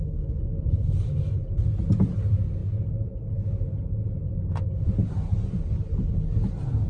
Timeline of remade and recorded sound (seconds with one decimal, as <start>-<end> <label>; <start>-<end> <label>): 0.0-6.9 recorded